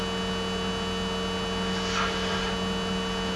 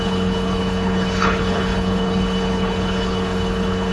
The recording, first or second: first